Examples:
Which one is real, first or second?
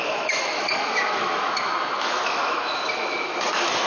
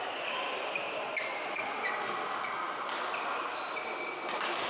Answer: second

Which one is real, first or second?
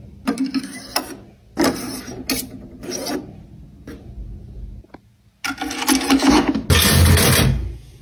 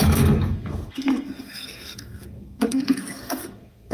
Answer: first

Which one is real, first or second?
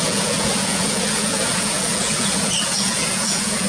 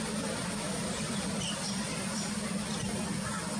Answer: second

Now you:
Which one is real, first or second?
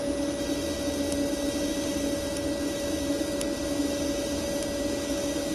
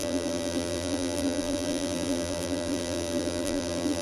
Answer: first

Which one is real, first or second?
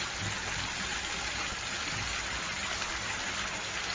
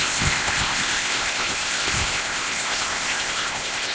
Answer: first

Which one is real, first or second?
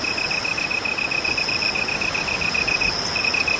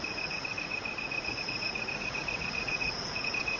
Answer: first